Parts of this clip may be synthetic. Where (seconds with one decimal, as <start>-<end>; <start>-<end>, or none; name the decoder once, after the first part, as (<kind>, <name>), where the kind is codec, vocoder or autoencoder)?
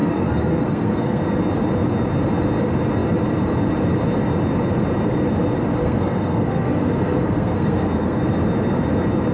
0.0-1.2 (codec, SNAC); 5.8-8.2